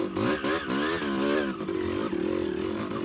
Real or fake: real